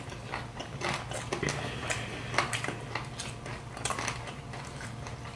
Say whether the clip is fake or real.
real